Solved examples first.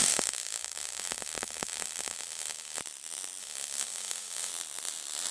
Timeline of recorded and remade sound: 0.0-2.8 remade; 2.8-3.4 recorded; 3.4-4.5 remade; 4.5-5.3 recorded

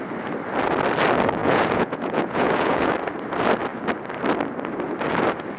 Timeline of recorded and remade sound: 0.0-1.4 recorded; 1.4-2.9 remade; 2.9-5.6 recorded

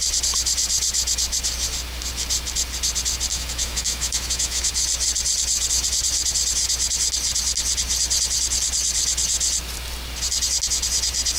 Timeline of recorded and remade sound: 0.0-3.3 recorded; 3.3-4.7 remade; 4.7-11.4 recorded

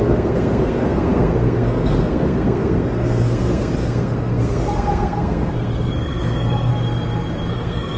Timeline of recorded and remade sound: 0.0-6.7 remade; 6.7-7.5 recorded; 7.5-8.0 remade

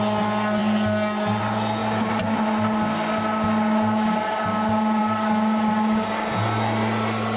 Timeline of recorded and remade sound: 0.0-7.4 recorded

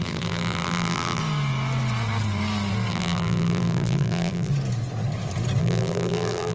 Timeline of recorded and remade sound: 0.0-1.2 remade; 1.2-2.9 recorded; 2.9-4.5 remade; 4.5-5.6 recorded; 5.6-6.5 remade